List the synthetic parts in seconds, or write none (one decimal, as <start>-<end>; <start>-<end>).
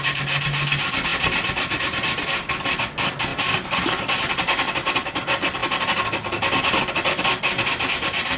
1.1-2.5; 3.3-4.3